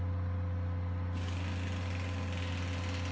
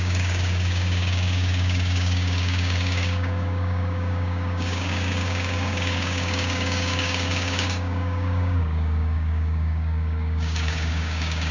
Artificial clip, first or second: second